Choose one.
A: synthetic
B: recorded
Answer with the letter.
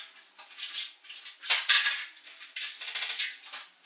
B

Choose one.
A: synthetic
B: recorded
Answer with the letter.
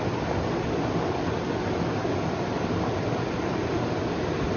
B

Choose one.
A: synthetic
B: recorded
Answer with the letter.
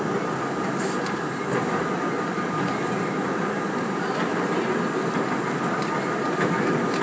B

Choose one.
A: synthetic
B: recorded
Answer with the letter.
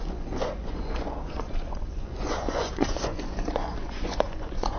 A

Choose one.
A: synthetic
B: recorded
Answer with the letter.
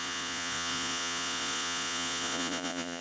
A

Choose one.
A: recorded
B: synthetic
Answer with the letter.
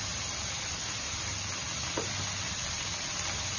A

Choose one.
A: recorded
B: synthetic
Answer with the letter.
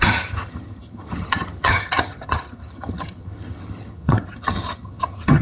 B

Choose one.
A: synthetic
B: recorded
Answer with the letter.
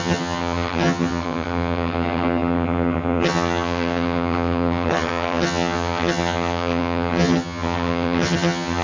A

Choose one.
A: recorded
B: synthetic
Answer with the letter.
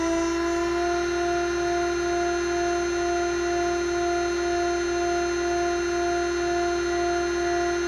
A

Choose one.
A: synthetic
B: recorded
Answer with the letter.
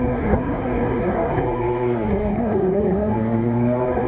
A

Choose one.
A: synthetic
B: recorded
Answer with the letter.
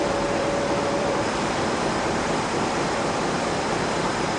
A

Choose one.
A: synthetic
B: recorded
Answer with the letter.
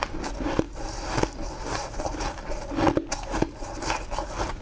B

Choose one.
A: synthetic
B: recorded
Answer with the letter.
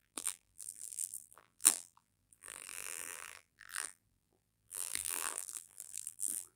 A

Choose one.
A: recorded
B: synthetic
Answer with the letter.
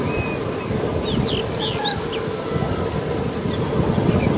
A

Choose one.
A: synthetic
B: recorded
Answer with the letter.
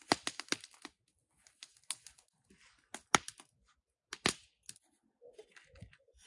B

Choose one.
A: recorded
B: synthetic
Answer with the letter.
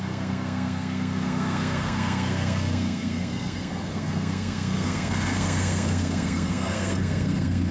B